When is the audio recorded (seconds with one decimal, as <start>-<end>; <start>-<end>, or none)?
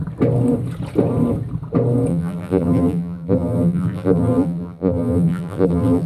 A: 0.0-2.1